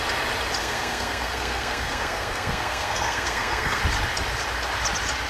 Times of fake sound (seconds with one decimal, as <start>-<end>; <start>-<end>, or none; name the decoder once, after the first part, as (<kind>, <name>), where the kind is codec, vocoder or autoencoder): 0.6-3.8 (codec, SNAC)